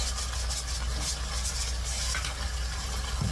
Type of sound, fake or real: real